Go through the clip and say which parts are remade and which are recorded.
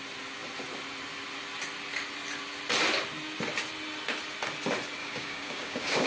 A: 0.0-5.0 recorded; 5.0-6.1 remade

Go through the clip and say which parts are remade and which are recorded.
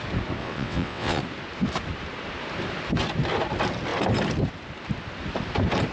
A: 0.0-0.4 recorded; 0.4-1.2 remade; 1.2-5.9 recorded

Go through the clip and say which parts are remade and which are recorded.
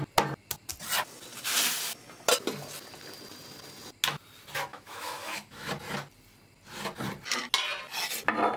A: 0.0-4.7 recorded; 4.7-5.7 remade; 5.7-8.6 recorded